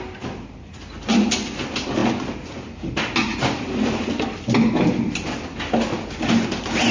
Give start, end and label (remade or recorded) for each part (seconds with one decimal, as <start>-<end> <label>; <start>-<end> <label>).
0.0-6.9 recorded